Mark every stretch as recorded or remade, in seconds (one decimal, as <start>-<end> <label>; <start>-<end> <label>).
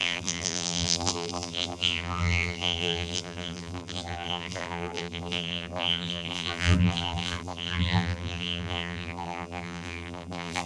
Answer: 0.0-10.7 remade